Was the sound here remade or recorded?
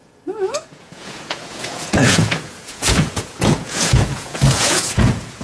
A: remade